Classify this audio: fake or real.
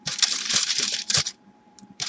fake